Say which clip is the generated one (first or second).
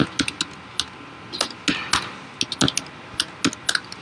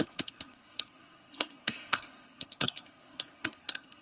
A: second